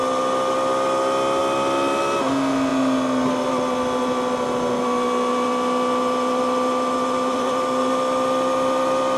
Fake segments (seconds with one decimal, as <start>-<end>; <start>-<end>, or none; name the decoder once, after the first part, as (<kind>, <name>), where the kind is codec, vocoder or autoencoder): none